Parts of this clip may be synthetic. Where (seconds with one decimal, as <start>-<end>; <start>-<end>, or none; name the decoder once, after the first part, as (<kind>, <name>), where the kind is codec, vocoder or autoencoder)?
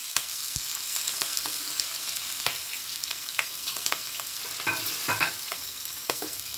0.0-4.4 (codec, SNAC); 5.2-6.6